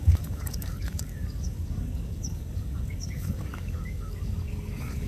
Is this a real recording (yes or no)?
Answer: no